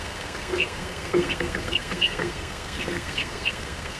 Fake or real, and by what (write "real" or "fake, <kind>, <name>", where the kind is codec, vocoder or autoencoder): fake, codec, SNAC